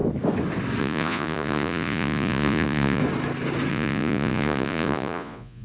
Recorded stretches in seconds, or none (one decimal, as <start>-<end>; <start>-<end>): 0.0-0.8; 3.0-3.7